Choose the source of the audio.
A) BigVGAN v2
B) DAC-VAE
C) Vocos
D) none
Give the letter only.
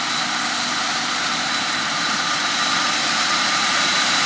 A